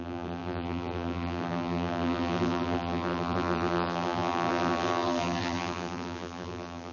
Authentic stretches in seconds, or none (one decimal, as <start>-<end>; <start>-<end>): none